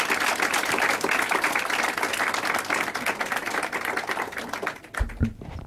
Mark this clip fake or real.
real